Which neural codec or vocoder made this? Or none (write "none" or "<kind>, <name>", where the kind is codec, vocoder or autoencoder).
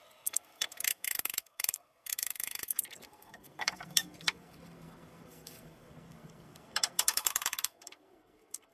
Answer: codec, SNAC